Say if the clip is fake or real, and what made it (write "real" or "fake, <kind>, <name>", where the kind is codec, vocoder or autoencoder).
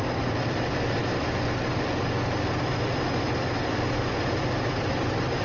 fake, vocoder, BigVGAN v2